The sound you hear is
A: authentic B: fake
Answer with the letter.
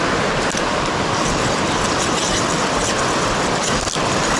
A